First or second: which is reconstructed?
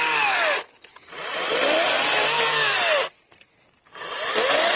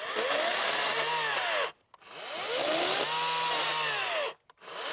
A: first